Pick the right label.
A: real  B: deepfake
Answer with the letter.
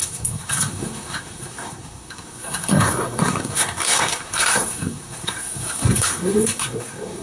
B